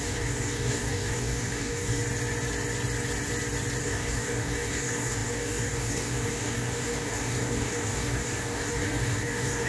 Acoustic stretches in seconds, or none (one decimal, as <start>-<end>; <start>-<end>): 2.0-3.8